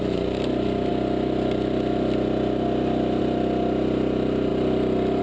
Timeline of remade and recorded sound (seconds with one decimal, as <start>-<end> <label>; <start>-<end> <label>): 0.0-5.2 recorded